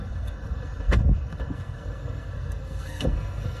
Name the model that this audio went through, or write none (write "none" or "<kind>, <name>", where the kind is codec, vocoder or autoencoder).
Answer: codec, SNAC